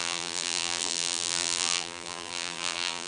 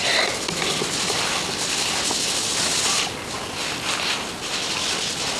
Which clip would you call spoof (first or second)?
first